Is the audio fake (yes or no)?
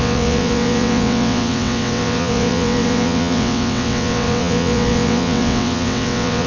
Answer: yes